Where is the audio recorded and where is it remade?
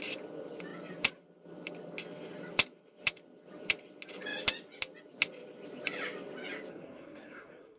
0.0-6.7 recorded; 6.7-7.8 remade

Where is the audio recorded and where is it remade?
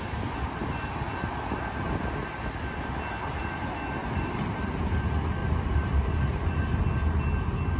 0.0-4.0 recorded; 4.0-4.8 remade; 4.8-5.4 recorded; 5.4-6.9 remade; 6.9-7.8 recorded